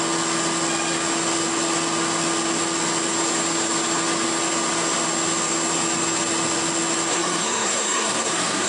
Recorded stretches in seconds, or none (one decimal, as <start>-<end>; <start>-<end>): 0.0-7.1